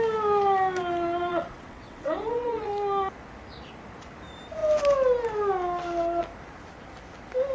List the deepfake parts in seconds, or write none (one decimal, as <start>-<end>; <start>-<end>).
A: 1.3-2.7

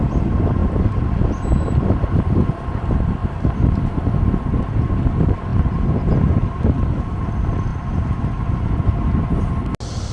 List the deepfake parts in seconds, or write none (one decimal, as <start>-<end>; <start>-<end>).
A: 0.6-2.7; 5.5-7.3; 7.7-8.2

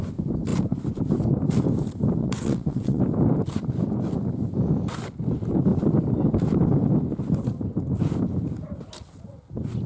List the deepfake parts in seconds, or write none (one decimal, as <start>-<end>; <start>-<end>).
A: 2.2-3.0

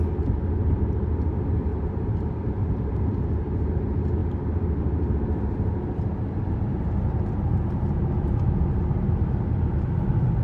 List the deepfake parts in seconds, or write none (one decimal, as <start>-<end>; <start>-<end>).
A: 1.7-3.7